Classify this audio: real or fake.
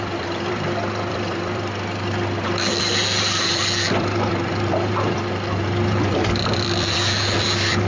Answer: fake